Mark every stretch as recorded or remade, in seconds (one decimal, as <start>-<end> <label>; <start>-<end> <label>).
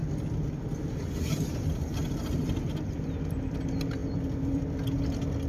0.0-5.5 recorded